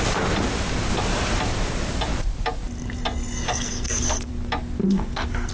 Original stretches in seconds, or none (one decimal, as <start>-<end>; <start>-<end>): 0.0-3.5; 4.3-4.8

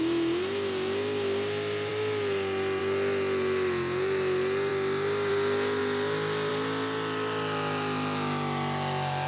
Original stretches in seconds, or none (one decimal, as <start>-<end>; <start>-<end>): 0.0-9.3

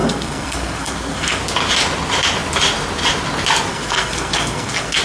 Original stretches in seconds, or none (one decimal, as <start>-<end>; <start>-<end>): 1.4-3.7

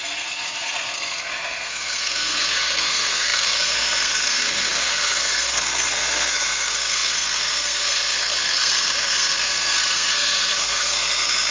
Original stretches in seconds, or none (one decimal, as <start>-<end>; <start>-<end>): none